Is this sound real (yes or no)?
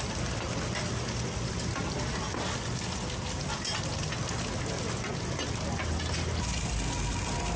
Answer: yes